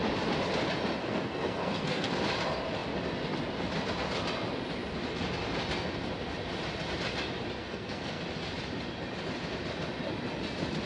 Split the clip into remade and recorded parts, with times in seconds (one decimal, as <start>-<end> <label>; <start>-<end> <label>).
0.0-1.0 recorded; 1.0-2.1 remade; 2.1-7.6 recorded; 7.6-8.2 remade; 8.2-10.9 recorded

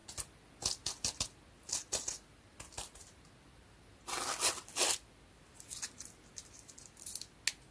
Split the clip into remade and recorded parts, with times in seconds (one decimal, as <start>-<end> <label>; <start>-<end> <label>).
0.0-7.7 recorded

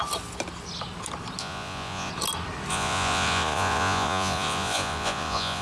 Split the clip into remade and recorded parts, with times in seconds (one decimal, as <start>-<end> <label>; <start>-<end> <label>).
0.0-1.4 recorded; 1.4-2.1 remade; 2.1-2.7 recorded; 2.7-5.6 remade

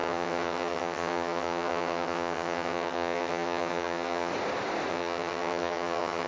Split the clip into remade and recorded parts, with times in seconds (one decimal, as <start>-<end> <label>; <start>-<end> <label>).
0.0-4.3 remade; 4.3-4.9 recorded; 4.9-6.3 remade

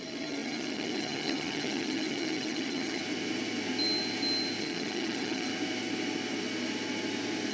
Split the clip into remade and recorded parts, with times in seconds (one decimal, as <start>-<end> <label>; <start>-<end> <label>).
0.0-3.0 remade; 3.0-4.6 recorded; 4.6-5.5 remade; 5.5-7.5 recorded

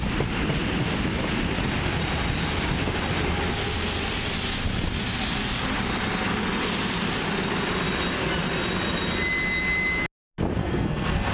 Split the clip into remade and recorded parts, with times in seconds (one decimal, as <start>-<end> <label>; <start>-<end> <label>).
0.0-10.6 recorded; 10.6-11.3 remade